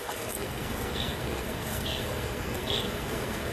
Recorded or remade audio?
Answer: remade